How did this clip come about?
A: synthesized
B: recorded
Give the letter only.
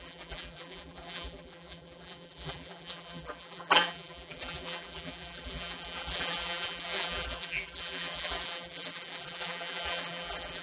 A